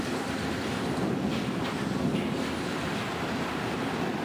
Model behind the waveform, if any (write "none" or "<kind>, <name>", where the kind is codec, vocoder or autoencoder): vocoder, BigVGAN v2